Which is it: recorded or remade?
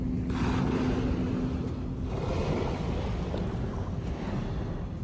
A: recorded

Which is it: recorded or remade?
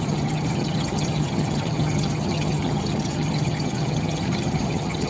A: remade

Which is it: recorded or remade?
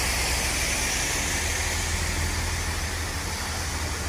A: recorded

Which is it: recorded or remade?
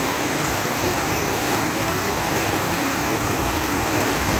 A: remade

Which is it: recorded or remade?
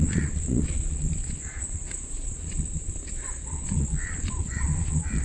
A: remade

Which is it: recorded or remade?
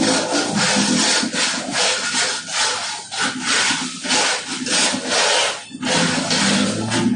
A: recorded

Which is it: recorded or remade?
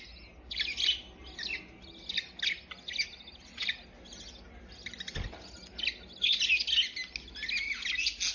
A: recorded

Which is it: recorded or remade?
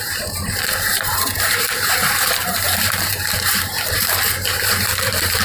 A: remade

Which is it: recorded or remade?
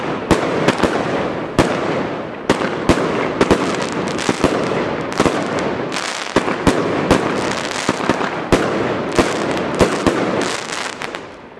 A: recorded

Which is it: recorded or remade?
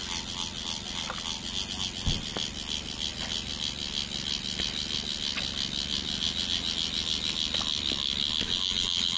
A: recorded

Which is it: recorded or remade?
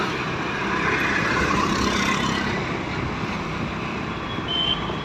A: recorded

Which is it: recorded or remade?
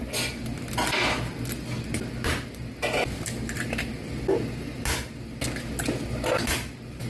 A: recorded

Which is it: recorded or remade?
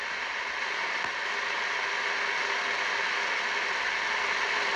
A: recorded